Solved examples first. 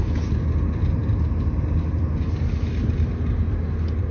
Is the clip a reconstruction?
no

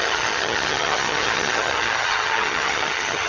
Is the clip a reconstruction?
yes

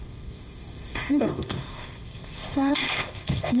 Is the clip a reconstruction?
yes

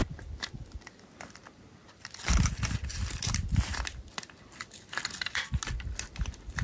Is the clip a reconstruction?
no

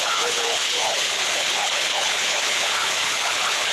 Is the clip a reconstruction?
yes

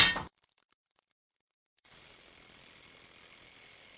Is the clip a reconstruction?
yes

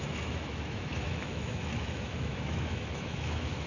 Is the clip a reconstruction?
yes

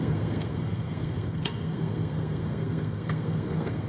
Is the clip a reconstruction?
yes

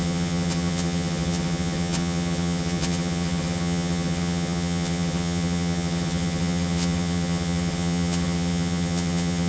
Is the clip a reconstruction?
yes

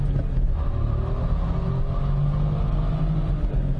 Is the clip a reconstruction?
no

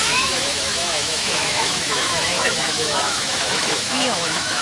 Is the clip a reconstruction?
yes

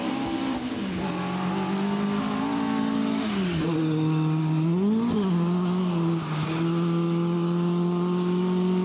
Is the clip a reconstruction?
no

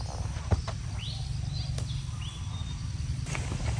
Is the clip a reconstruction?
no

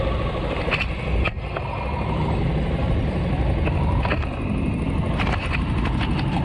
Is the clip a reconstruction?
no